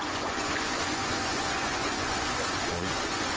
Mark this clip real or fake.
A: fake